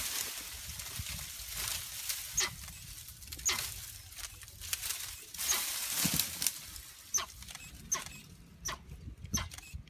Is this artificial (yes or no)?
no